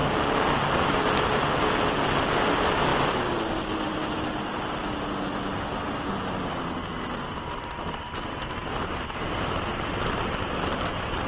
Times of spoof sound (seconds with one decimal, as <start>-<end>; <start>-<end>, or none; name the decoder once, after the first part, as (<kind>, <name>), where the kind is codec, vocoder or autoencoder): 9.7-11.3 (vocoder, BigVGAN v2)